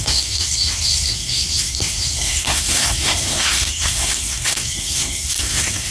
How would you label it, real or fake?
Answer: fake